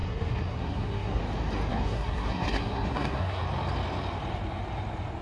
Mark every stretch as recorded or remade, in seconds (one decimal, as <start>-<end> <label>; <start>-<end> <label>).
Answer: 0.0-1.2 remade; 1.2-1.7 recorded; 1.7-3.4 remade; 3.4-5.2 recorded